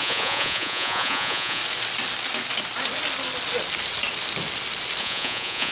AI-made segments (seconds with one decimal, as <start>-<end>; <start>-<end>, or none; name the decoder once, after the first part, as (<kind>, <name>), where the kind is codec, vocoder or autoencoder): 0.0-1.6 (vocoder, Vocos); 5.0-5.7